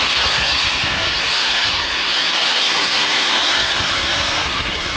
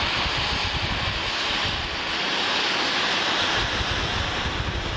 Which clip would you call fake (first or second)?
first